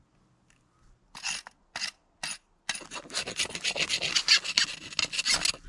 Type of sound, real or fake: real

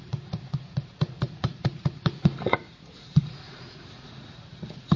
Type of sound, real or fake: fake